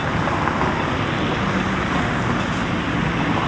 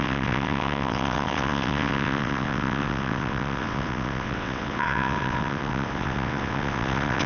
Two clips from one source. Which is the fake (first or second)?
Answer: second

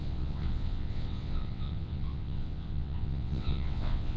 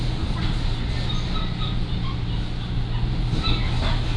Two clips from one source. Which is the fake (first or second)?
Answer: first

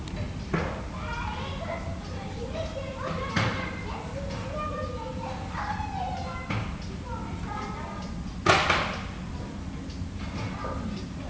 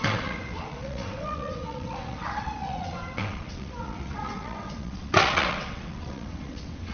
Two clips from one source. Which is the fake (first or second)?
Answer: second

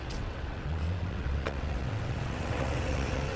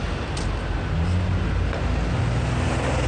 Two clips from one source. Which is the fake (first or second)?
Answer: first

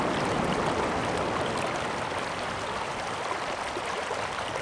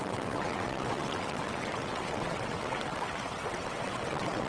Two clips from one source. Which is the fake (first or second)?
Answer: second